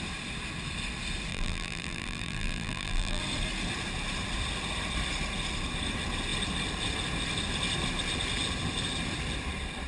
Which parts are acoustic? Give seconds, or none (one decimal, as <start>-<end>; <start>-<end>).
0.0-1.3; 3.2-9.9